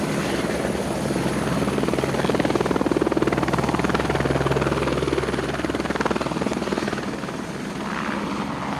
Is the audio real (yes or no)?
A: yes